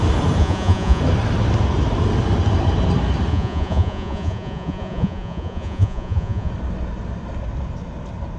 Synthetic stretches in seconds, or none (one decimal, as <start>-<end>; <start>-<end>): 0.4-1.0; 3.3-6.5